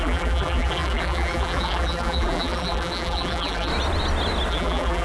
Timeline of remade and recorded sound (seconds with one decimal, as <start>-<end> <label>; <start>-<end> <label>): 0.0-3.7 remade; 3.7-4.5 recorded; 4.5-5.0 remade